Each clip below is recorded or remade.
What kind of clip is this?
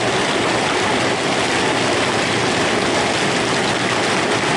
recorded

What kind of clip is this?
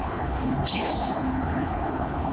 remade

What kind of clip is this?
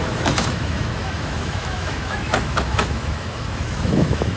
remade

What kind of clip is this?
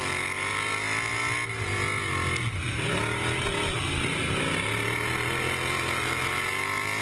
recorded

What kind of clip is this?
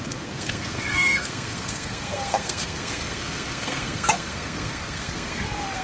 remade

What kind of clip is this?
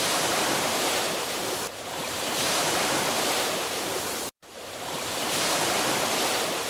remade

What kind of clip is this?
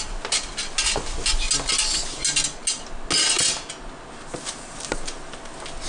recorded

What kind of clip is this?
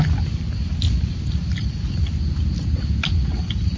recorded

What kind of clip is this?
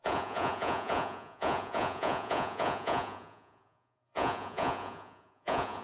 remade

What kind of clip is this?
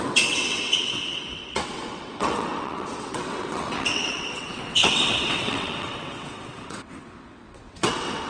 remade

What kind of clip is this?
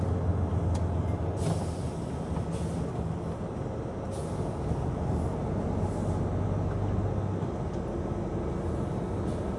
recorded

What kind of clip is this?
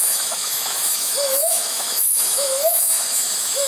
remade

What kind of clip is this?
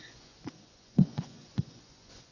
remade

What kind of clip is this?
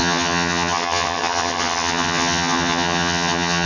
remade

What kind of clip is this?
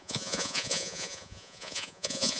remade